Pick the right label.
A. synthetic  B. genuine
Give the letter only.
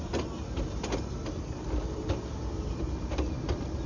B